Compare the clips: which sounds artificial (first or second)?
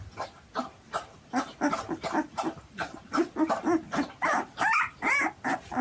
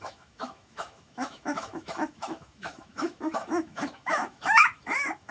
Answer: second